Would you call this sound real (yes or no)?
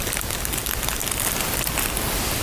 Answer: yes